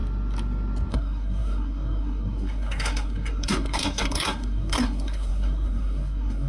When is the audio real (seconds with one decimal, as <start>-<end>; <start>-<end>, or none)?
0.0-0.9